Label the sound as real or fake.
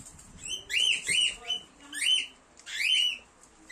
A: real